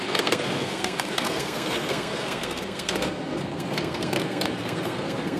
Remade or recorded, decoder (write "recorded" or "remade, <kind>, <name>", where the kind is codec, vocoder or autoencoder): remade, codec, SNAC